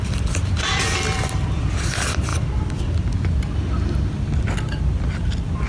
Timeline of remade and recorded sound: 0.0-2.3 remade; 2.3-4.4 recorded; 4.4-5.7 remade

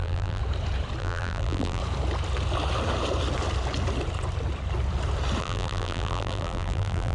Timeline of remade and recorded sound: 0.0-0.4 remade; 0.4-1.0 recorded; 1.0-1.8 remade; 1.8-5.4 recorded; 5.4-7.1 remade

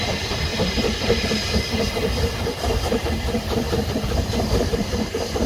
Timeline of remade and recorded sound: 0.0-5.5 remade

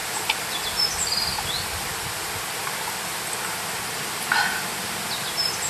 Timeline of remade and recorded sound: 0.0-0.9 remade; 0.9-5.7 recorded